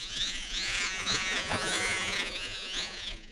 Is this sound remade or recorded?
remade